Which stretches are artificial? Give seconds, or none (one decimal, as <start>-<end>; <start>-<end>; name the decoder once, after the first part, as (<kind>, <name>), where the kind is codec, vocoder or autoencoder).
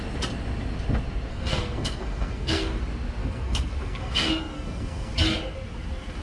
1.3-2.8 (codec, SNAC); 3.2-5.1